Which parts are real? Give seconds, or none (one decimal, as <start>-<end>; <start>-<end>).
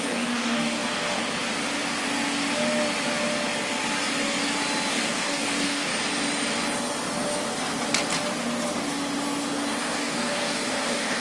1.2-4.9; 5.9-9.8